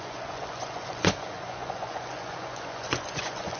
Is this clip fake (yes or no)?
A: yes